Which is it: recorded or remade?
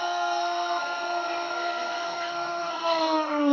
remade